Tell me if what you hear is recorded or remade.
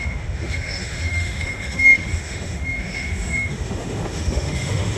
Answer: remade